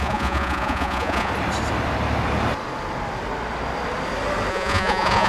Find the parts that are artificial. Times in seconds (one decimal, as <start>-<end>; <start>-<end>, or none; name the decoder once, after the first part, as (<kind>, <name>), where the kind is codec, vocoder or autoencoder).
0.0-1.3 (vocoder, Vocos); 4.5-5.3